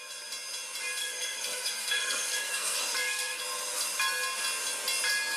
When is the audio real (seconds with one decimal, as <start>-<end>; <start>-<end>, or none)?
0.0-1.0; 3.4-5.4